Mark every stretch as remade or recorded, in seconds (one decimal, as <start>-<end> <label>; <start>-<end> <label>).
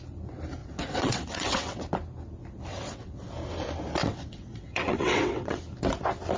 0.0-0.6 recorded; 0.6-1.8 remade; 1.8-2.7 recorded; 2.7-3.3 remade; 3.3-4.0 recorded; 4.0-5.6 remade; 5.6-6.4 recorded